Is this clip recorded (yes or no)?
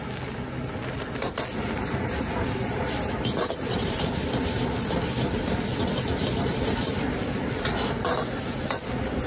yes